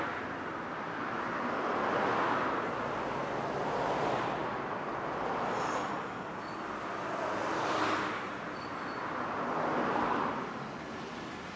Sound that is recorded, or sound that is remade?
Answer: recorded